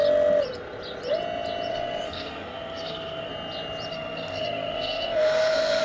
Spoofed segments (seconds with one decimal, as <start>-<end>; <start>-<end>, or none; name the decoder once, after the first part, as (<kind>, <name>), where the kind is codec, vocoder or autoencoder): 1.7-3.3 (codec, SNAC); 3.9-5.8